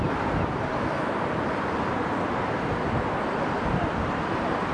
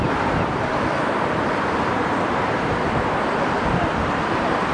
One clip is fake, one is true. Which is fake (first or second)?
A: second